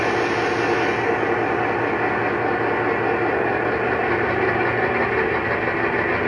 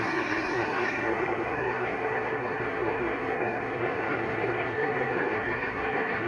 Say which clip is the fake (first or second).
second